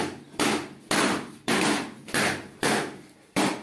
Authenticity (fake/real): real